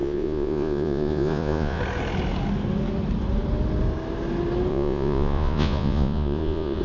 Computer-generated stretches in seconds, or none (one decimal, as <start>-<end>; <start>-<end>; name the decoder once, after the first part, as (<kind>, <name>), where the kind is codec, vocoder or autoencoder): 0.0-1.8 (vocoder, Vocos); 4.7-6.8